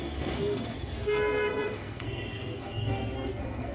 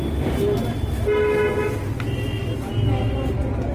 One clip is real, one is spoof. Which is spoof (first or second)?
first